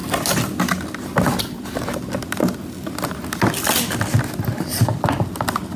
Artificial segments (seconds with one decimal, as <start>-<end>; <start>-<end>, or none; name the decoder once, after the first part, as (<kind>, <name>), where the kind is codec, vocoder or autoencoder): none